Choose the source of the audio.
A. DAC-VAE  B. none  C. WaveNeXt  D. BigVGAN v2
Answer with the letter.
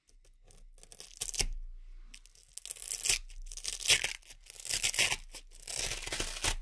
B